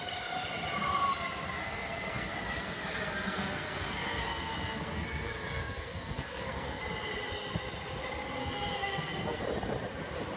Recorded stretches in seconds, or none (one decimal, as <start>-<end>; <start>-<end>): 0.0-1.6; 6.8-8.4; 9.4-10.4